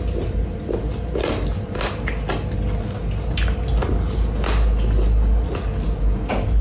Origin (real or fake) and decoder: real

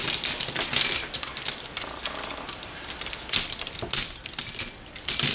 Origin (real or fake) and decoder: real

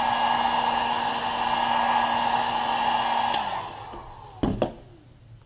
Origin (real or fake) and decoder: real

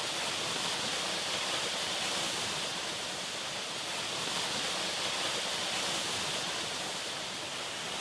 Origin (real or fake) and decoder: real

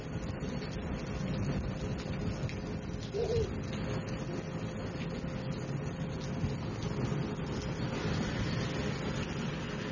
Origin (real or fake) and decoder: real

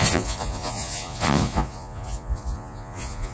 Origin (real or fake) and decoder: fake, vocoder, Vocos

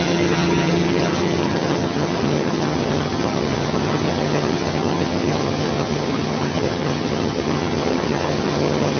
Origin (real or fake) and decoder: fake, vocoder, HiFi-GAN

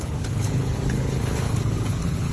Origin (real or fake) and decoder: fake, codec, HILCodec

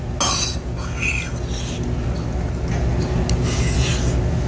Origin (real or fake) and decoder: real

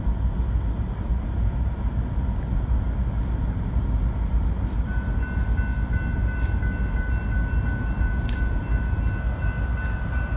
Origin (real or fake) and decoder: real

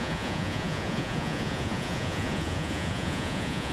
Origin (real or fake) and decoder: fake, vocoder, Vocos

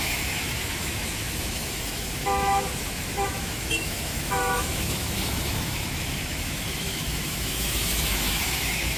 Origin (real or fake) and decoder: fake, autoencoder, DAC-VAE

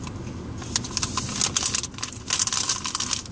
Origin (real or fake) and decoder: real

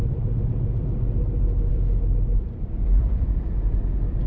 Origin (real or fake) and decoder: fake, vocoder, BigVGAN v2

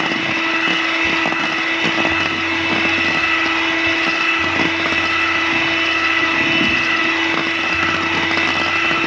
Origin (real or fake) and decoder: real